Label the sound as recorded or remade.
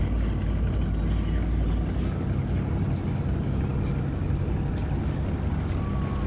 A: recorded